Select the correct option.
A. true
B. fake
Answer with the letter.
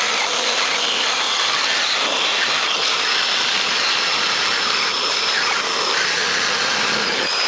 A